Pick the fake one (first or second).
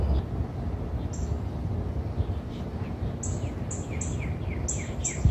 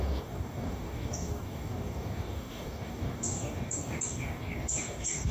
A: second